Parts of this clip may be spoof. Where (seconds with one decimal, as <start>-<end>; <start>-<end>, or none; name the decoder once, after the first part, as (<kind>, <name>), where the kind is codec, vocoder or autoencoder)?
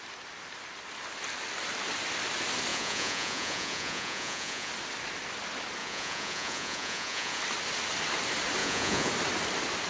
2.7-4.7 (vocoder, Vocos); 5.8-7.4; 8.6-9.1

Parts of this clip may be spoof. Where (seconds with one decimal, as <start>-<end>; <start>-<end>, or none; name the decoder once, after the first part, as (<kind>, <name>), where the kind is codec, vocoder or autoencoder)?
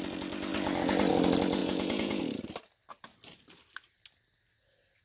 1.6-2.2 (vocoder, Vocos)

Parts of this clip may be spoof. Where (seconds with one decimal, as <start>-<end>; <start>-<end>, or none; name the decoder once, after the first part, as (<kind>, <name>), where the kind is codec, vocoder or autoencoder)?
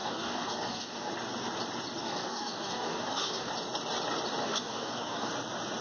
0.0-1.1 (codec, DAC); 2.0-3.5; 4.4-5.3